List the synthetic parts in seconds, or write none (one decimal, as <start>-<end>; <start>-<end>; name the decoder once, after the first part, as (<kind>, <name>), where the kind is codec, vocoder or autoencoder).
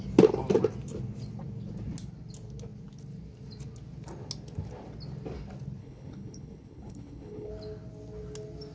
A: 5.8-7.5 (codec, HILCodec)